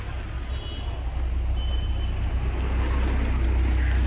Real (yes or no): yes